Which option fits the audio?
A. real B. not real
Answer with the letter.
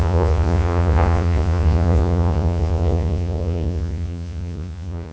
B